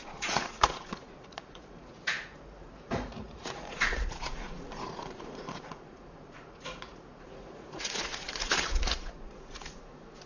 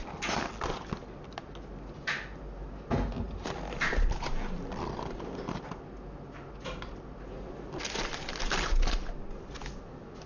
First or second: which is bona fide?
second